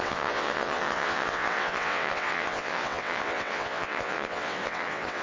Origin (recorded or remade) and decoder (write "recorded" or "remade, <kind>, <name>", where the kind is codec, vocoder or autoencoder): remade, vocoder, WaveNeXt